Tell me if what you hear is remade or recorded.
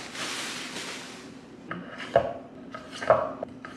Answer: recorded